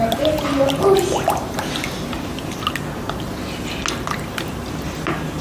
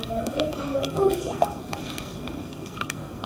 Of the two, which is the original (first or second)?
first